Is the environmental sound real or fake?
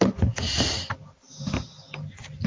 real